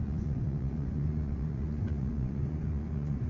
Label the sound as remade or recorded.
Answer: remade